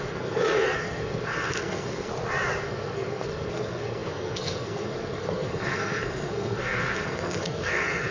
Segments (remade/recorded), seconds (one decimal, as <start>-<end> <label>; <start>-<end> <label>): 0.0-2.1 remade; 2.1-2.6 recorded; 2.6-8.1 remade